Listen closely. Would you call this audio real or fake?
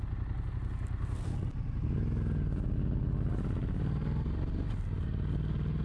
real